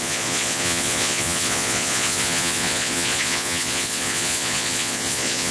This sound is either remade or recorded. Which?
remade